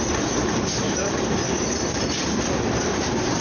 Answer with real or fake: fake